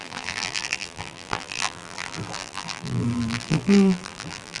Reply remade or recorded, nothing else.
remade